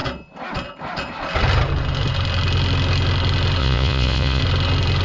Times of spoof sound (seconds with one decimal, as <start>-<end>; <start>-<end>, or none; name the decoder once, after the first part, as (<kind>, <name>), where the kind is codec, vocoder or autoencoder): 3.6-4.4 (vocoder, Vocos)